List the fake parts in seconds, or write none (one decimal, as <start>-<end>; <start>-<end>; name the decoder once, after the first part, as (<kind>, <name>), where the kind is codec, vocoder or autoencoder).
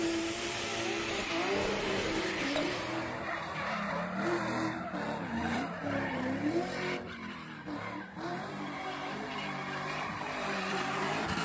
0.0-0.7 (vocoder, BigVGAN v2); 5.2-11.4